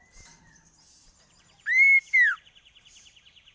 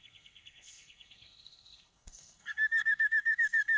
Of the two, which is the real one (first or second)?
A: first